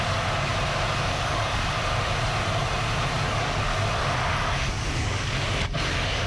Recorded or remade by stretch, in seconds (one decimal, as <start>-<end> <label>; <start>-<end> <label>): 0.0-0.5 remade; 0.5-1.0 recorded; 1.0-1.5 remade; 1.5-3.2 recorded; 3.2-3.7 remade; 3.7-4.3 recorded; 4.3-6.3 remade